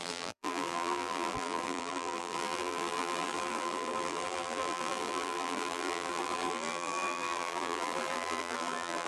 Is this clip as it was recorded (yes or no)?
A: no